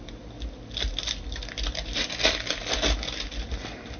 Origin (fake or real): real